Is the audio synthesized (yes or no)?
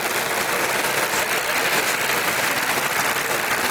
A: no